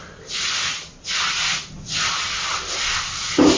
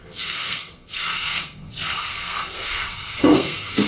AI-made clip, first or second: second